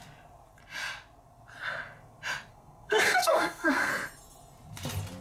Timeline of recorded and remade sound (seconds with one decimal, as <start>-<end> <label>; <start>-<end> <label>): 0.0-2.5 recorded; 2.5-3.9 remade; 3.9-5.2 recorded